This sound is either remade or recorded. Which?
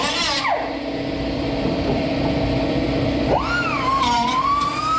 remade